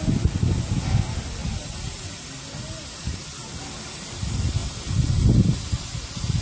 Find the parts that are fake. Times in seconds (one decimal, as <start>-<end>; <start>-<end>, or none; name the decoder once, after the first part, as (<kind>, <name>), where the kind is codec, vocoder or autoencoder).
none